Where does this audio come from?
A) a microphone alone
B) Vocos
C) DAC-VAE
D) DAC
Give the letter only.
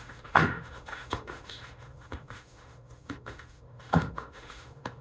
C